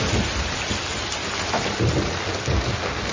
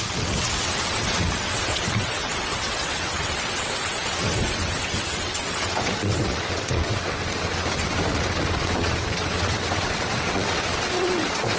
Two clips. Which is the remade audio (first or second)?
second